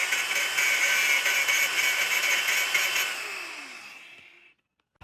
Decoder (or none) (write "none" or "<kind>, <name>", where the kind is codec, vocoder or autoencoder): none